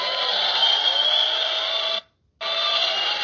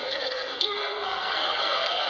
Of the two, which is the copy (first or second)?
second